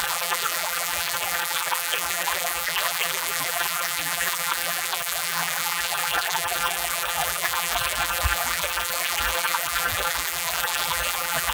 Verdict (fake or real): fake